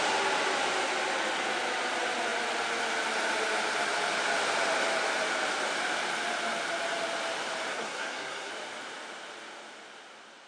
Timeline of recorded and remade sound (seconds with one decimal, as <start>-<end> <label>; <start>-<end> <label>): 0.0-7.7 recorded; 7.7-8.5 remade; 8.5-10.5 recorded